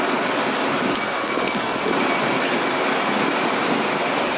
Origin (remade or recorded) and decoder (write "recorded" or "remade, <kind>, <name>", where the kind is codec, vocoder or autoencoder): recorded